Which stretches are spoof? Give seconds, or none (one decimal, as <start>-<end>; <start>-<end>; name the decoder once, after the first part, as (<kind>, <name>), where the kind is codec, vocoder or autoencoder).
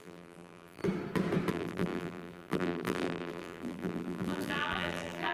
0.0-0.8 (vocoder, BigVGAN v2); 1.5-5.3